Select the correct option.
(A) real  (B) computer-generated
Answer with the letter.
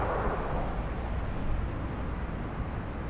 A